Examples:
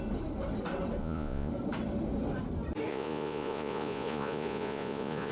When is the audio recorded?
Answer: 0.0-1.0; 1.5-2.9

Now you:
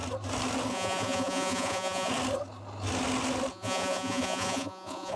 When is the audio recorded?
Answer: 0.0-0.7; 2.1-3.5

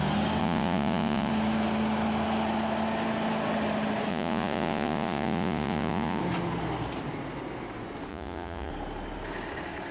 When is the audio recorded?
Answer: 0.0-0.4; 1.3-4.1; 6.2-8.1; 8.7-9.9